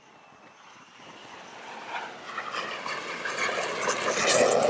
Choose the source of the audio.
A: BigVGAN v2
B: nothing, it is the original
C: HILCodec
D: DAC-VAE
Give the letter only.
B